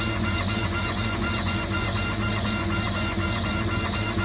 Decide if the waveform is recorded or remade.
remade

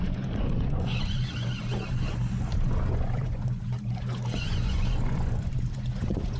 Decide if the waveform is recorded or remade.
remade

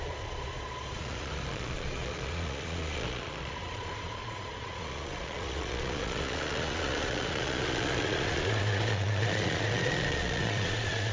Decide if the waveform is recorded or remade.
remade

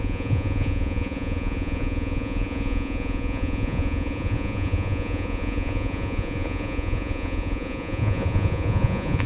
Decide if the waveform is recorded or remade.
remade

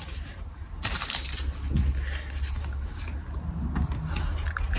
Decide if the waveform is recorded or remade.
recorded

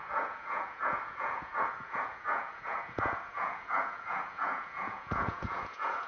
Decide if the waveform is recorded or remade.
remade